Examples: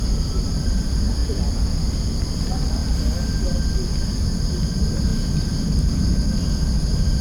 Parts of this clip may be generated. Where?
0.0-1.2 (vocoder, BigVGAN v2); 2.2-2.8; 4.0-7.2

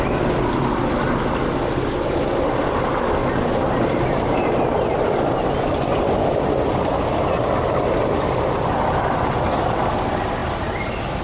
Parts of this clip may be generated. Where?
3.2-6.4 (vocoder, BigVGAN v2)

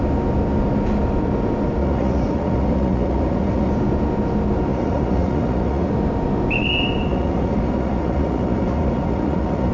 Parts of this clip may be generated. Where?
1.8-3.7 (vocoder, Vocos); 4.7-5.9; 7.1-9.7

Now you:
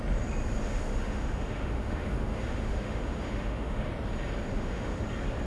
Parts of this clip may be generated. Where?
0.6-3.9 (autoencoder, DAC-VAE); 4.5-5.0